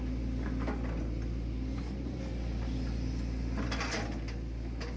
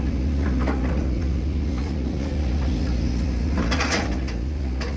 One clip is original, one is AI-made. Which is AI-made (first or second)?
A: second